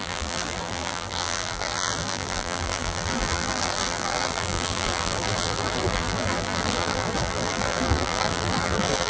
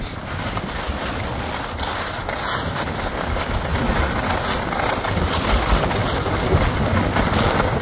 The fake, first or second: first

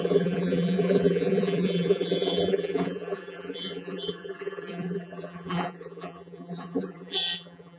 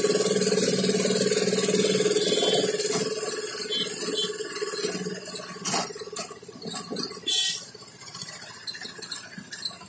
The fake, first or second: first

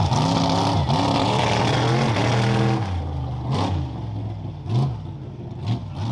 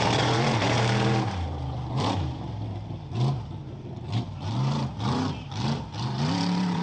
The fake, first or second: second